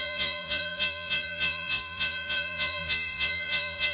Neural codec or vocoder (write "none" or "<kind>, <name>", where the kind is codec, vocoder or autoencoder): vocoder, Vocos